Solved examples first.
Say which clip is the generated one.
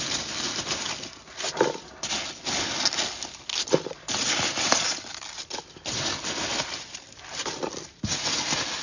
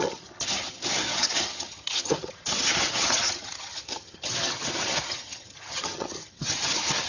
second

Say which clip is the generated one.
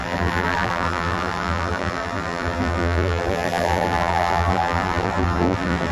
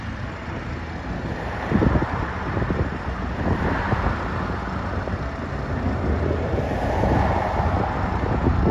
first